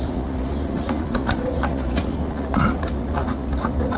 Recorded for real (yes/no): no